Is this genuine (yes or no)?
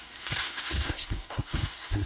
no